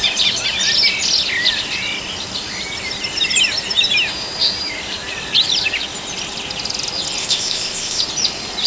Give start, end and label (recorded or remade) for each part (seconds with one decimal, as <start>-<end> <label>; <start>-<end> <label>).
0.0-7.2 recorded; 7.2-8.0 remade; 8.0-8.7 recorded